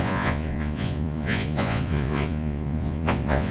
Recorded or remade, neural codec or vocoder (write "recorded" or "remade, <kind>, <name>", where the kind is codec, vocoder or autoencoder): remade, vocoder, Vocos